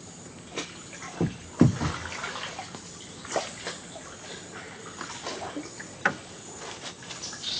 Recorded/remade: recorded